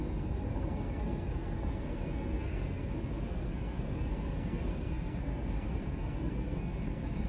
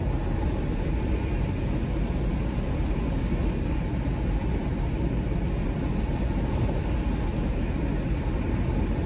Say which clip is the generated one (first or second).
first